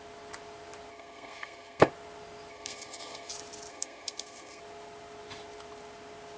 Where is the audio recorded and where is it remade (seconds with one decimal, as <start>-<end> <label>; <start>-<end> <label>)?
0.0-0.9 recorded; 0.9-1.9 remade; 1.9-2.5 recorded; 2.5-3.3 remade; 3.3-3.7 recorded; 3.7-4.6 remade; 4.6-6.4 recorded